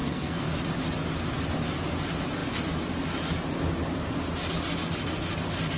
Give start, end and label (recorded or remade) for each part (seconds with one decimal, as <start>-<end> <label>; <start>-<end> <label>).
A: 0.0-0.5 remade; 0.5-5.8 recorded